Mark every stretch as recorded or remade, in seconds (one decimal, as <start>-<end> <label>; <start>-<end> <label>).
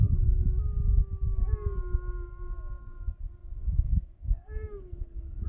0.0-0.4 remade; 0.4-2.8 recorded; 2.8-5.5 remade